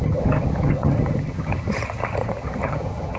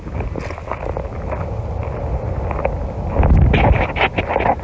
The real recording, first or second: second